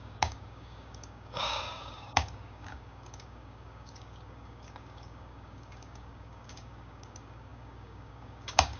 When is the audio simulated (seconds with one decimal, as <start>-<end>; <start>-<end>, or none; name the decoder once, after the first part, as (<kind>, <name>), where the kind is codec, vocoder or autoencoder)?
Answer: 0.0-8.8 (codec, DAC)